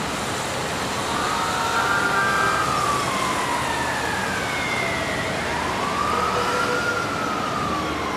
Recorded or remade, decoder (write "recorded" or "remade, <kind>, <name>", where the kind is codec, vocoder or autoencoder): recorded